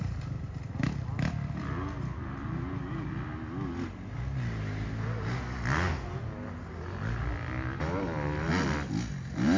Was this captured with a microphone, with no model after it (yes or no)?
yes